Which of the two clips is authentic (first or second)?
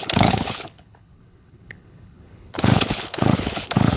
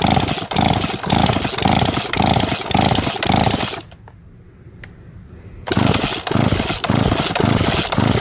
second